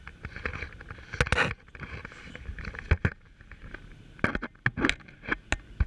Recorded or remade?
recorded